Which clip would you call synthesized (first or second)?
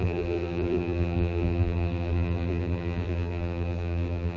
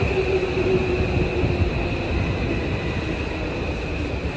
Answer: first